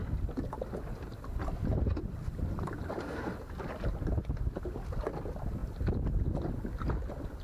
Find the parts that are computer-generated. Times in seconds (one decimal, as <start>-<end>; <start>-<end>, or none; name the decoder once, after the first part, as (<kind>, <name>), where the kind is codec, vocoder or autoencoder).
none

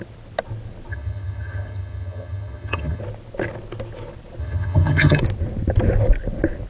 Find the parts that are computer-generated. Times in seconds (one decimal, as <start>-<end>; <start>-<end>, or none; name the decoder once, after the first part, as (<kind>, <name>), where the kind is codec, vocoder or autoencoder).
0.9-3.0 (vocoder, HiFi-GAN); 4.4-5.2

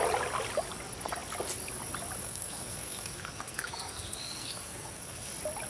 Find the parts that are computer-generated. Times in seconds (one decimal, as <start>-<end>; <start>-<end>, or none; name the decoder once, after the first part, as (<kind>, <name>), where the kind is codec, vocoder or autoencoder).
2.2-5.3 (codec, SNAC)

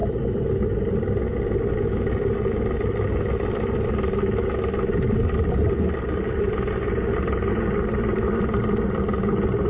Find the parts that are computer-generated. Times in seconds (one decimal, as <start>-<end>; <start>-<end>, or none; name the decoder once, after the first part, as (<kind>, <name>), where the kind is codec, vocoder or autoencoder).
none

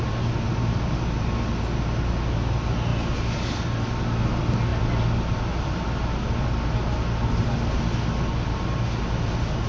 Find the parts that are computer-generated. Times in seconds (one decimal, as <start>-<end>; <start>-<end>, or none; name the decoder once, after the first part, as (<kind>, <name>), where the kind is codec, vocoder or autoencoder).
none

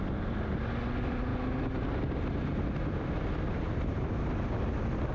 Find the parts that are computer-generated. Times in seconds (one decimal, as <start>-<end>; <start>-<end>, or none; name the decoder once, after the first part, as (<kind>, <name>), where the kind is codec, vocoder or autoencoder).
none

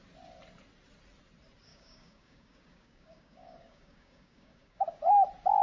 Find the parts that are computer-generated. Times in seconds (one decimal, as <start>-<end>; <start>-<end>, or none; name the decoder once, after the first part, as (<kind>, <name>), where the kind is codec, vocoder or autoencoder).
1.7-5.0 (codec, DAC)

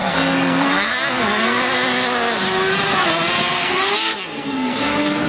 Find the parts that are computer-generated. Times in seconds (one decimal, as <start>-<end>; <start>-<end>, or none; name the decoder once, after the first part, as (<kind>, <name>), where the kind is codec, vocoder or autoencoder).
0.0-1.6 (codec, SNAC); 3.4-5.3